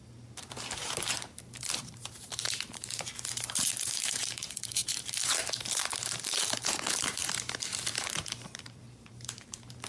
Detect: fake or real fake